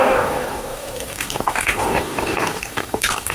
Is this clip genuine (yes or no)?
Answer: no